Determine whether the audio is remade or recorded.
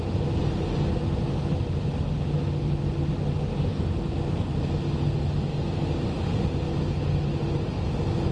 recorded